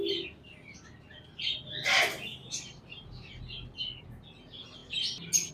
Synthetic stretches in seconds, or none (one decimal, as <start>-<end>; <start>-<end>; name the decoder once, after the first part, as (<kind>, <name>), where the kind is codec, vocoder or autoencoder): none